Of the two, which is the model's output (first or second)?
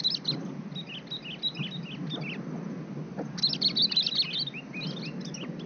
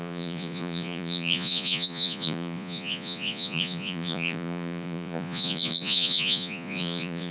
second